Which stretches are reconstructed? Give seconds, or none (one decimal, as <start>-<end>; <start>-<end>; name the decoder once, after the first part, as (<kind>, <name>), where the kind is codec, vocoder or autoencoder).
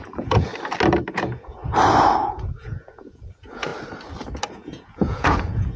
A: 0.0-0.5 (vocoder, Vocos); 1.1-1.6; 2.3-3.7; 4.5-5.8